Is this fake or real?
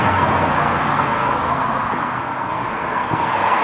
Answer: fake